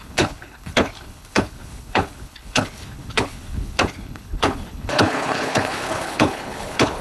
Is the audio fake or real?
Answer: fake